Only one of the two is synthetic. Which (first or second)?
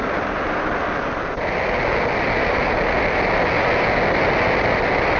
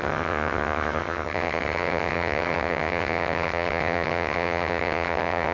second